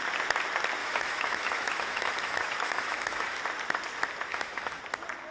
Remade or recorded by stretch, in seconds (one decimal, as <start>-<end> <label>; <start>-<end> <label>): 0.0-0.8 recorded; 0.8-3.4 remade; 3.4-4.3 recorded; 4.3-4.8 remade; 4.8-5.3 recorded